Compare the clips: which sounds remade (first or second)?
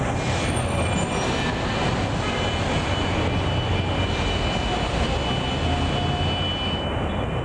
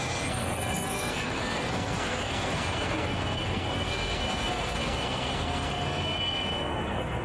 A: second